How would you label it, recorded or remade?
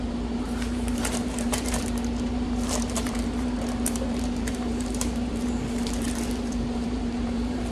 remade